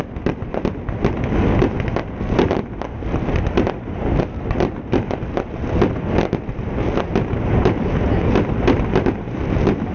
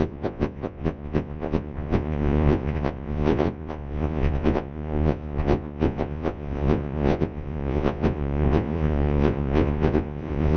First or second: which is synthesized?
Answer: second